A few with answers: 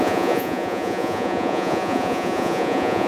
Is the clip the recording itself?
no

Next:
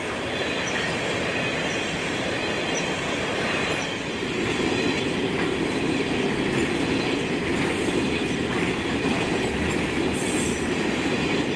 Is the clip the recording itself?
no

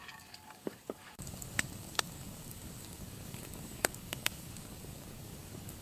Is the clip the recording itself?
no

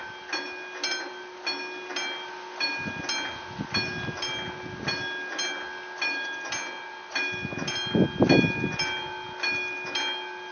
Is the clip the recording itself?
yes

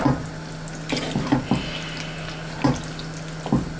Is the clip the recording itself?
yes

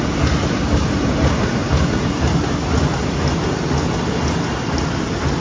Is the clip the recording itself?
yes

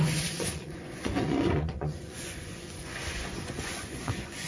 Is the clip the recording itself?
no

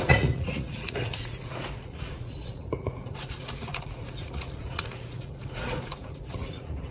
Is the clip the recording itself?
no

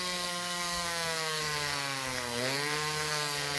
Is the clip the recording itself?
no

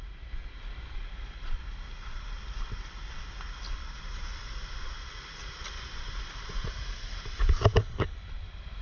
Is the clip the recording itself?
yes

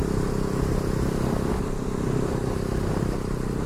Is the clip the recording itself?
yes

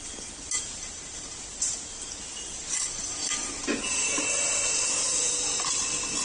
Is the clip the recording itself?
yes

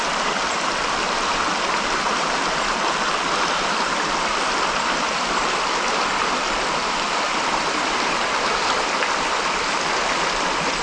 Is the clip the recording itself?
yes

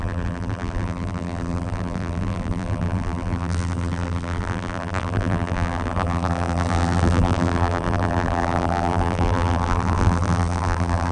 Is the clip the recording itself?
no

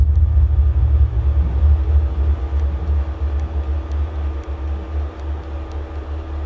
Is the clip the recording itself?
yes